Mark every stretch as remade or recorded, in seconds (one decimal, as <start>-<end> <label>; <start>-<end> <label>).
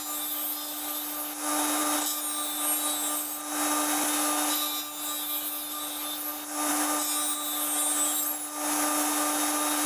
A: 0.0-9.9 recorded